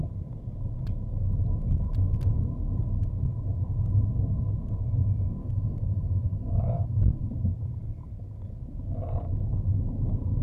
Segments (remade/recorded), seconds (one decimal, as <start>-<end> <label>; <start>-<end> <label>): 0.0-5.4 recorded; 5.4-7.2 remade; 7.2-10.4 recorded